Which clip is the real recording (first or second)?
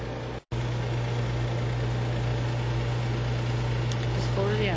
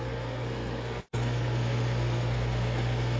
first